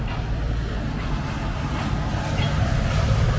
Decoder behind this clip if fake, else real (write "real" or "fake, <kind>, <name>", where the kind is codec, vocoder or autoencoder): real